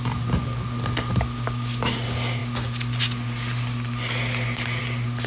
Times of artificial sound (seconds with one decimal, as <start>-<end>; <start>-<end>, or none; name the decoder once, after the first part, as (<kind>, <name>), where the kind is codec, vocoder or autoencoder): none